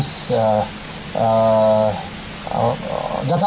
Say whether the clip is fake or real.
real